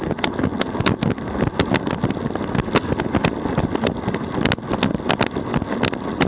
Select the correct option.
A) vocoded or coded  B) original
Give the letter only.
B